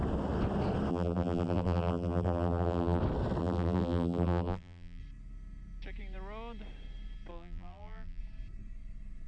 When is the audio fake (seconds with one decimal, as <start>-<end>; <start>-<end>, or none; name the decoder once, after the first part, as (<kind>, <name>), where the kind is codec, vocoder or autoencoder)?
0.9-3.0 (vocoder, BigVGAN v2); 3.4-5.0; 7.3-8.2